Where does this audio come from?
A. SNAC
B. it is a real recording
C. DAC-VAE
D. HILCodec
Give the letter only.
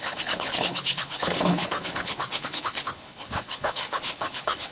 D